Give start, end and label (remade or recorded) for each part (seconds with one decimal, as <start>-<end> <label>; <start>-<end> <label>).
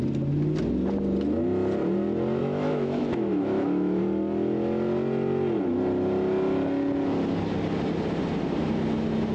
0.0-2.4 recorded; 2.4-4.0 remade; 4.0-9.3 recorded